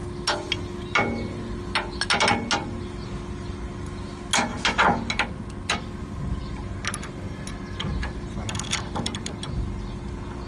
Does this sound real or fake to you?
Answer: real